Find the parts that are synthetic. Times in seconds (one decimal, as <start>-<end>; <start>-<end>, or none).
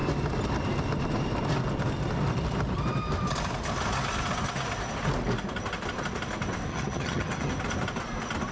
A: 6.7-7.5